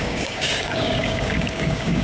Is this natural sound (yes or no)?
no